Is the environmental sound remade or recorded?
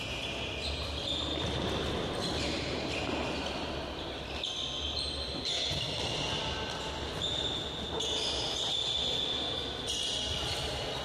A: recorded